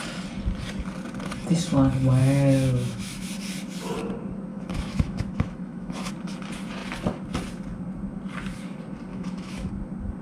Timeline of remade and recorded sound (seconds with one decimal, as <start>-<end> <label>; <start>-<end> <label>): 0.0-2.2 recorded; 2.2-3.3 remade; 3.3-4.5 recorded; 4.5-6.1 remade; 6.1-9.1 recorded; 9.1-9.7 remade; 9.7-10.2 recorded